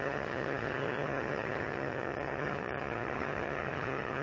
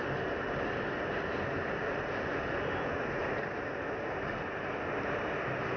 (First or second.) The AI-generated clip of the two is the first